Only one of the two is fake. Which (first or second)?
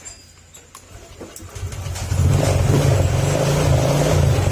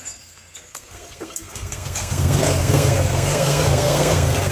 second